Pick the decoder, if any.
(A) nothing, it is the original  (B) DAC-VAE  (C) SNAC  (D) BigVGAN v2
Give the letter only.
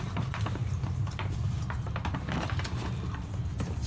A